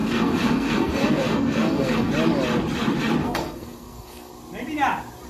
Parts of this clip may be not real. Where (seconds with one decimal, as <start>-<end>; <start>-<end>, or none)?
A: 0.0-2.1; 3.2-4.3